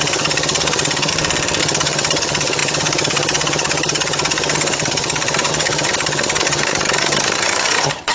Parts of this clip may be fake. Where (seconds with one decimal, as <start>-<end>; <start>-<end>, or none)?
0.0-1.1; 1.6-8.1

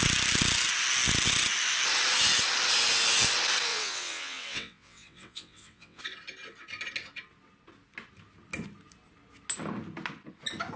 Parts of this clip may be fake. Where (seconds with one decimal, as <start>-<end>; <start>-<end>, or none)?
3.7-6.0

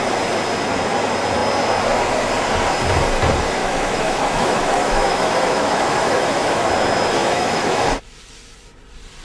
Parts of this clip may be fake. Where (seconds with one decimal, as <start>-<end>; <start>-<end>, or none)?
3.6-6.7; 7.2-7.8

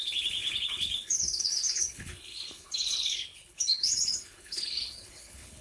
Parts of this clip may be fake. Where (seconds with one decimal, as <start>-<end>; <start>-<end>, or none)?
0.0-5.6

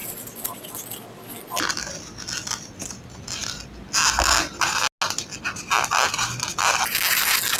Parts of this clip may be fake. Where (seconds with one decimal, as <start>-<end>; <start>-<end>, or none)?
none